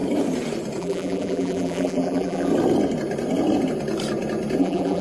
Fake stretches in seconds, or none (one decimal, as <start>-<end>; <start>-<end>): 0.8-2.5; 4.6-5.0

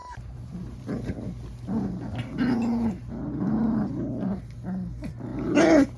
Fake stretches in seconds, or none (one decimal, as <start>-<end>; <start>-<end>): 0.0-0.8; 2.7-4.5; 5.3-6.0